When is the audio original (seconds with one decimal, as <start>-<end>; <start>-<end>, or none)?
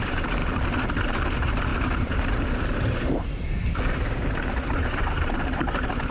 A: 0.4-1.0; 3.6-4.2